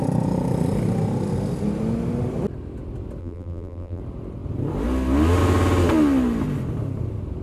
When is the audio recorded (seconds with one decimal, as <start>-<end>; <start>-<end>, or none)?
0.0-3.2; 4.0-7.4